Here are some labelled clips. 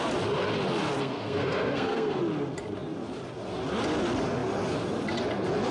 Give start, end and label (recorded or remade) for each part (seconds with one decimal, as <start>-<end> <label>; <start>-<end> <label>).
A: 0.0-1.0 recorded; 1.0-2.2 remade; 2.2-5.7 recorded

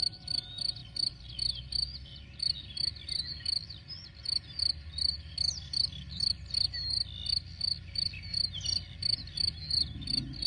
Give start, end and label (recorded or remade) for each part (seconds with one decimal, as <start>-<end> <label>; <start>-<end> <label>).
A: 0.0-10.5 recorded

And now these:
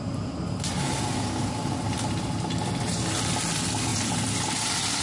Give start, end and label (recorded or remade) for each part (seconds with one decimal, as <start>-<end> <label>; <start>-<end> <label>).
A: 0.0-5.0 recorded

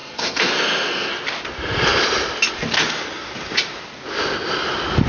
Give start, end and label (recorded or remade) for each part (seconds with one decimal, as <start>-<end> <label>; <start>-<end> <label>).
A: 0.0-1.1 remade; 1.1-5.1 recorded

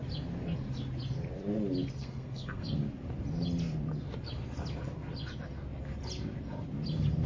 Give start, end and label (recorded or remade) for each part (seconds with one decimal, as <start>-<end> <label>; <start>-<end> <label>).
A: 0.0-2.0 recorded; 2.0-2.8 remade; 2.8-7.3 recorded

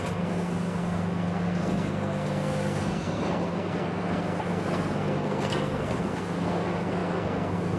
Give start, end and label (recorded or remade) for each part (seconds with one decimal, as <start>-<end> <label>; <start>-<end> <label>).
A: 0.0-7.8 remade

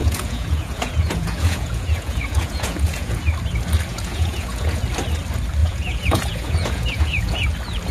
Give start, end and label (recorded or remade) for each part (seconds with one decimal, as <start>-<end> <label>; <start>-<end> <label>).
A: 0.0-3.2 remade; 3.2-3.9 recorded; 3.9-4.8 remade; 4.8-5.6 recorded; 5.6-7.5 remade; 7.5-7.9 recorded